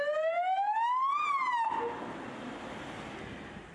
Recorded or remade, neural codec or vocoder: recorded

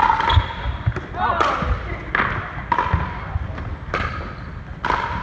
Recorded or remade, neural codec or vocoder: recorded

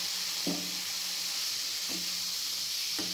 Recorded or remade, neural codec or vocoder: recorded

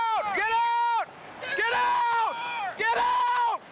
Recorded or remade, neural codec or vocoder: recorded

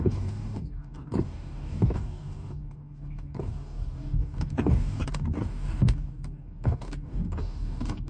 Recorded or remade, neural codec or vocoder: remade, codec, DAC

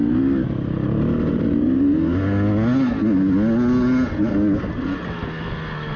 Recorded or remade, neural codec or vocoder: recorded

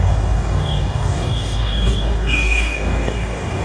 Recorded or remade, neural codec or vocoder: remade, codec, DAC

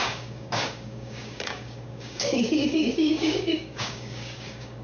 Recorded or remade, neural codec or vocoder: remade, codec, DAC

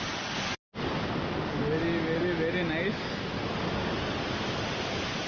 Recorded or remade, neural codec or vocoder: recorded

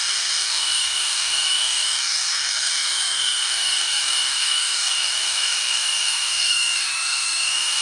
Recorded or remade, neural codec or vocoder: remade, codec, DAC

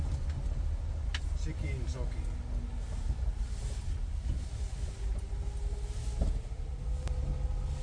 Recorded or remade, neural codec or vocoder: recorded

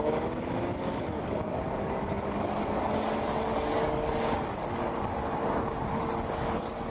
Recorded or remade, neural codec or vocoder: remade, codec, DAC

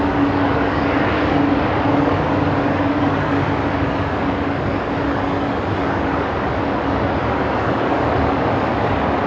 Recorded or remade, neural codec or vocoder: remade, codec, DAC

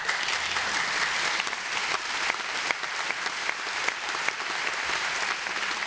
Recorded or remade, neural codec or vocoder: recorded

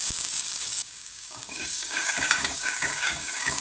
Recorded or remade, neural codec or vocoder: remade, codec, DAC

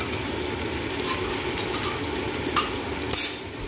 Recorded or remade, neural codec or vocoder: recorded